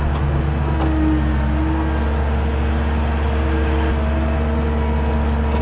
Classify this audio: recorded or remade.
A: recorded